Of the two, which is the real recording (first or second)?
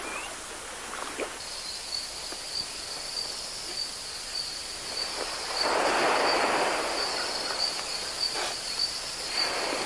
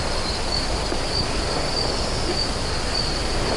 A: second